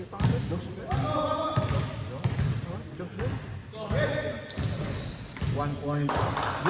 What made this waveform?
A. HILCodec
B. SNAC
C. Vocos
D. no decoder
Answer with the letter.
D